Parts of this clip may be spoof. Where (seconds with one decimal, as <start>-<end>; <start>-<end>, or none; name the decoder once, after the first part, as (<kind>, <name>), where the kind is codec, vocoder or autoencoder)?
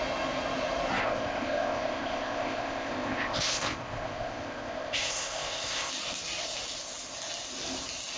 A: 1.0-5.9 (codec, ZipCodec)